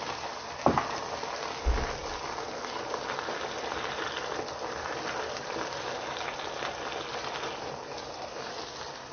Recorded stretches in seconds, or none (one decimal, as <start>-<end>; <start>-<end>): 0.0-9.1